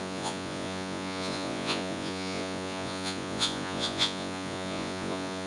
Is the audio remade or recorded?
remade